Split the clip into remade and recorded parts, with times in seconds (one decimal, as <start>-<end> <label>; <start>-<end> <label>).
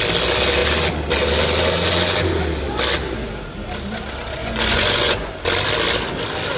0.0-4.4 recorded; 4.4-5.3 remade; 5.3-6.6 recorded